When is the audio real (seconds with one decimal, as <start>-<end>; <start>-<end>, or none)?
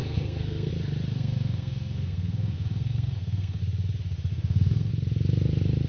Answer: 0.7-1.1; 3.6-4.3; 4.9-5.9